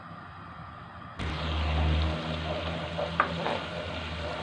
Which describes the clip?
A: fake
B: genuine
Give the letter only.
B